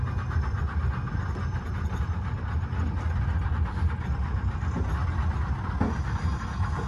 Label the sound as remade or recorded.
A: recorded